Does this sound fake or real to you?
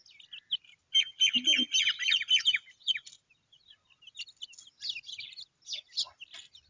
real